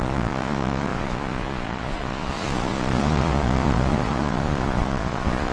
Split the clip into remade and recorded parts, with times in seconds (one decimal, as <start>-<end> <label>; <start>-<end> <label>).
0.0-5.5 remade